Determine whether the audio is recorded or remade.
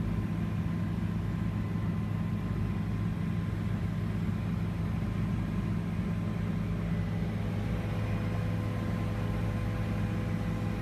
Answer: recorded